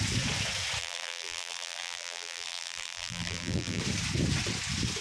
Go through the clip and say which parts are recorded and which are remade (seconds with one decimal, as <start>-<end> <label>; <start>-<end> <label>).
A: 0.0-0.8 recorded; 0.8-3.8 remade; 3.8-5.0 recorded